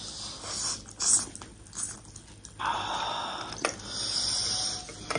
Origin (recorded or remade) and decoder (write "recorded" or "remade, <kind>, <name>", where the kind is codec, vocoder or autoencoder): recorded